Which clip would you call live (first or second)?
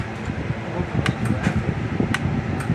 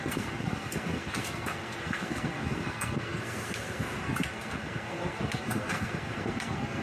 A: first